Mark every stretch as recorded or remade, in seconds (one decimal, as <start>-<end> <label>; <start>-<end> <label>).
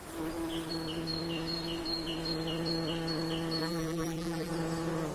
0.0-3.6 recorded; 3.6-4.5 remade; 4.5-5.1 recorded